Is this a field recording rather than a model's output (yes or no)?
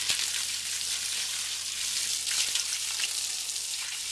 yes